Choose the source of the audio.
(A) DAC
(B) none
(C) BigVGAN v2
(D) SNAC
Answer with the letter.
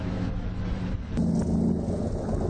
B